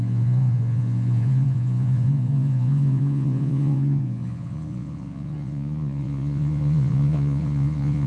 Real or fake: fake